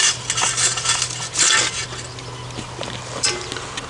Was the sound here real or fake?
real